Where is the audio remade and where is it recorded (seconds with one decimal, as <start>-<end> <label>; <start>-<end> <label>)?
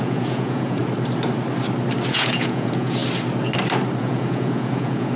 0.0-0.8 remade; 0.8-2.1 recorded; 2.1-3.0 remade; 3.0-4.0 recorded; 4.0-5.2 remade